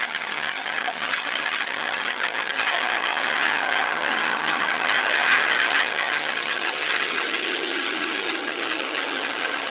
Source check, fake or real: fake